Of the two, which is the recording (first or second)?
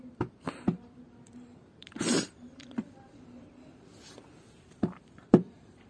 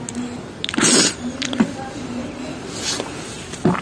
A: second